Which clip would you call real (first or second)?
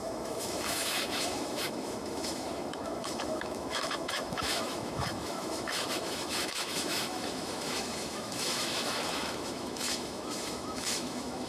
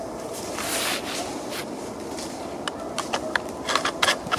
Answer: second